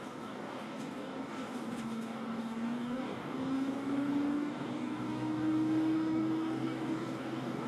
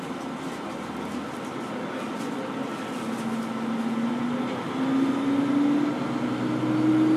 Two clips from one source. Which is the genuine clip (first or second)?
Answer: second